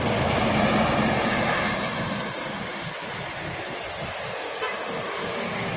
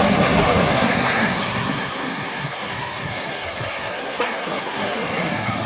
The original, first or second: first